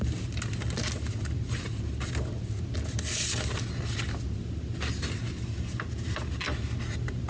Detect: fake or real real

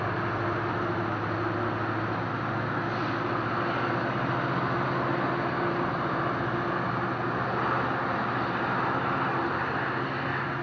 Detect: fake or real real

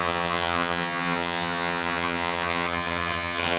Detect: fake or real fake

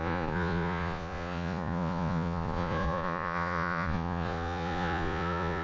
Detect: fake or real fake